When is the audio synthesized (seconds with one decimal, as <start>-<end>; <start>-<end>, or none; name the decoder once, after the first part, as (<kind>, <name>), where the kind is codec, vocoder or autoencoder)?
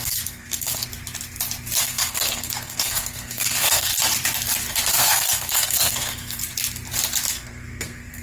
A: 0.0-0.9 (codec, SNAC); 1.8-3.9; 4.9-6.4; 7.3-8.2